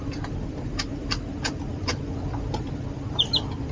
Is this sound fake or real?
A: real